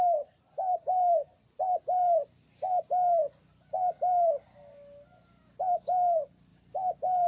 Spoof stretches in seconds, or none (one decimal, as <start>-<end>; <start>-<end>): none